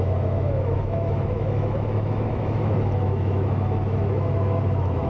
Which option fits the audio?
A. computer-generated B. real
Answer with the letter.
A